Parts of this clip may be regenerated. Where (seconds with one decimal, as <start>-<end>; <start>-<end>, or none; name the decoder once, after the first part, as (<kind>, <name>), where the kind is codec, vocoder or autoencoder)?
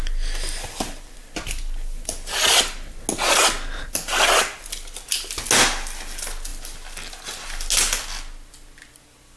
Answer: none